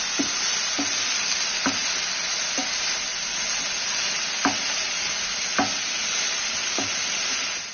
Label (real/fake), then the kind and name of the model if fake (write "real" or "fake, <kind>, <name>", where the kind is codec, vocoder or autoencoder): real